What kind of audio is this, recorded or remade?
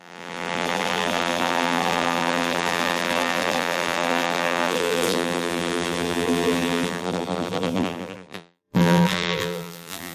remade